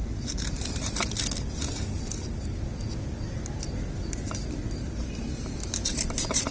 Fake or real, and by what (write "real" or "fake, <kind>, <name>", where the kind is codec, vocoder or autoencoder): real